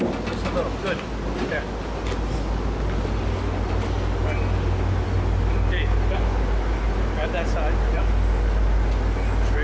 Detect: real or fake real